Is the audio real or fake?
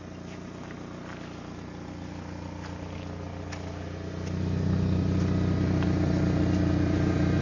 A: real